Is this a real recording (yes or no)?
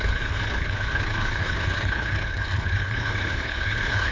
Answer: no